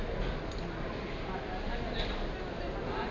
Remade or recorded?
recorded